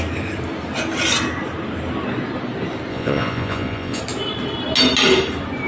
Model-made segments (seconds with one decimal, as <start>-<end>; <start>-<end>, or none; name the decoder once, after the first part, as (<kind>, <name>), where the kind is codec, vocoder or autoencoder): 2.9-4.0 (vocoder, Vocos)